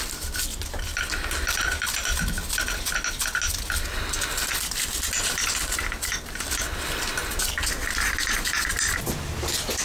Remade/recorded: recorded